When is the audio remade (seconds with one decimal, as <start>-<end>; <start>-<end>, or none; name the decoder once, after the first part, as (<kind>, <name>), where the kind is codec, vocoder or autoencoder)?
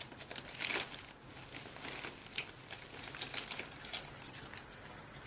none